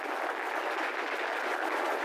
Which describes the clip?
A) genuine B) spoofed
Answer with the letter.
A